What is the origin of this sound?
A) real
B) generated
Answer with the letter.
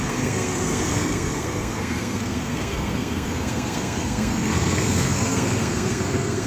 B